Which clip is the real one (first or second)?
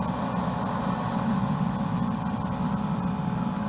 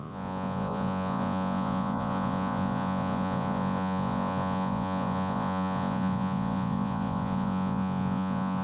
first